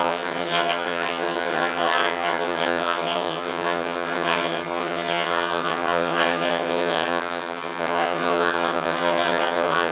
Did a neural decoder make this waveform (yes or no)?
yes